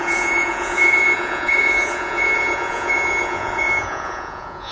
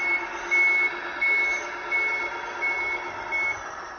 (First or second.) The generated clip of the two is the first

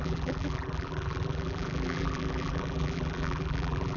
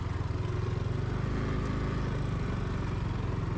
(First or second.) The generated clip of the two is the first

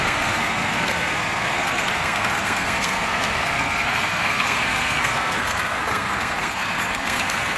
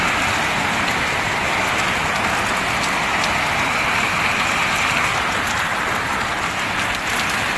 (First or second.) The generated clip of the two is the first